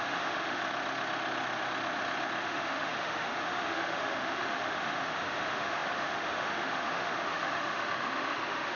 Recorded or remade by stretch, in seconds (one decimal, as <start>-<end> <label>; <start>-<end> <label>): 0.0-0.6 remade; 0.6-2.4 recorded; 2.4-8.8 remade